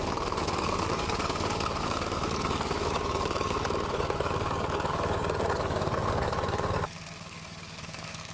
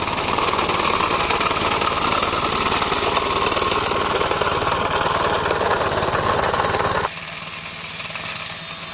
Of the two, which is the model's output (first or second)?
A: first